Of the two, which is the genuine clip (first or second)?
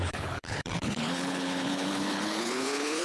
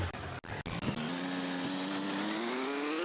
second